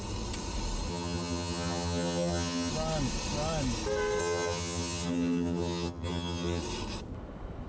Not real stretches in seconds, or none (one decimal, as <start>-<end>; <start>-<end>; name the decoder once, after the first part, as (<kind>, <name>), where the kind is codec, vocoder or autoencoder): 0.9-2.7 (vocoder, HiFi-GAN); 4.2-6.6